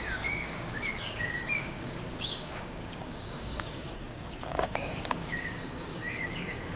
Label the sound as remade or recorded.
remade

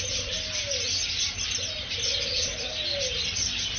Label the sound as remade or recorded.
recorded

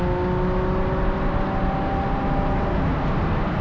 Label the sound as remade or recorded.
recorded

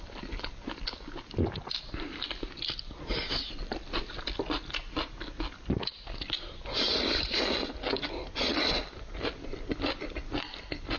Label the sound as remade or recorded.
recorded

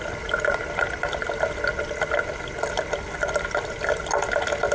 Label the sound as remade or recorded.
recorded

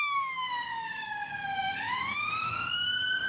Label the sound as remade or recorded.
remade